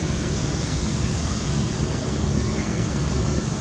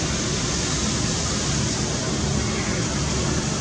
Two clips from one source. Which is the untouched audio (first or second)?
second